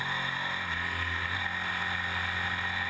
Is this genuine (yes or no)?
yes